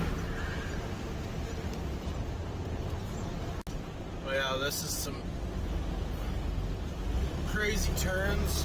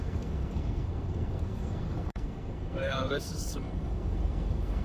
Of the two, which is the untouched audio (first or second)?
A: first